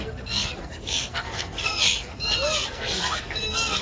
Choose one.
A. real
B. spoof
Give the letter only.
B